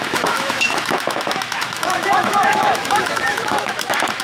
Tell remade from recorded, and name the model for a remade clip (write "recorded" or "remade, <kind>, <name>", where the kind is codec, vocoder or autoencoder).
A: remade, autoencoder, DAC-VAE